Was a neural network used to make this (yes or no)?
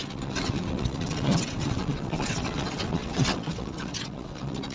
yes